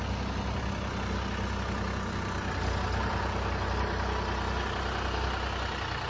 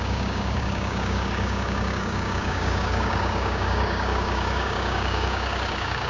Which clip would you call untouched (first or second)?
first